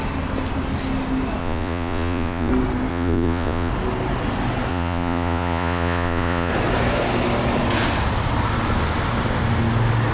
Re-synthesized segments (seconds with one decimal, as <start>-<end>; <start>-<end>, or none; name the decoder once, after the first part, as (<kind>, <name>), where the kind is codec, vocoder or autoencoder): 1.4-2.5 (vocoder, Vocos); 2.9-3.7; 4.7-6.5